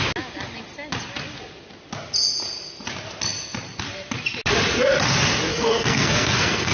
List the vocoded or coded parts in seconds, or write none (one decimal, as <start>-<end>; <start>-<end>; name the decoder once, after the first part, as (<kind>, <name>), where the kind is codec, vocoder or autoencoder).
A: 5.5-6.7 (codec, SNAC)